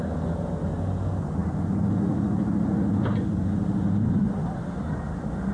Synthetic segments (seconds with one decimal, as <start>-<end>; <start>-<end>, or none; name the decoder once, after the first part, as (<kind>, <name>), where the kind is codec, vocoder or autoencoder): none